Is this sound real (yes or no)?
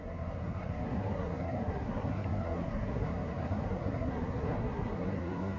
no